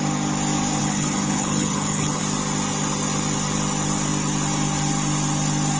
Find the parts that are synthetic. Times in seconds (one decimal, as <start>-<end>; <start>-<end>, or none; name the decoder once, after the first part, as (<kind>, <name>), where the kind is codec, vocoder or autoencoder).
0.8-2.2 (codec, HILCodec)